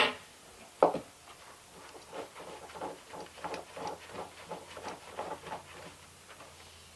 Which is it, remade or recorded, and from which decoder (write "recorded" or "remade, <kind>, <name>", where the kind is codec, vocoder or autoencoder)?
recorded